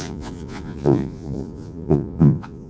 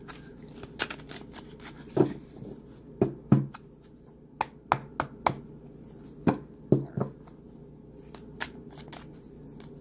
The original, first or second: second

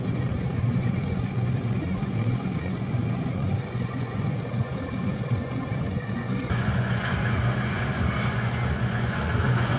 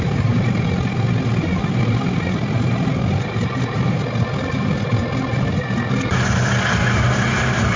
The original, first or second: second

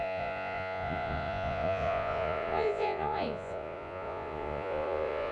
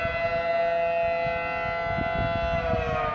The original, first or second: second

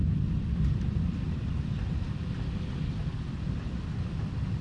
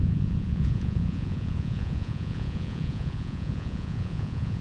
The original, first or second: first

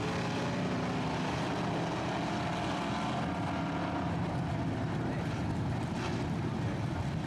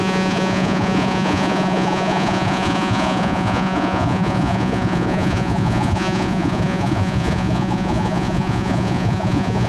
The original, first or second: first